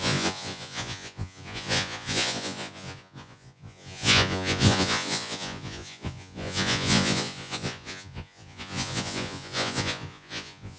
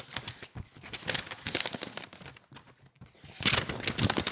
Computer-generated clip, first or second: first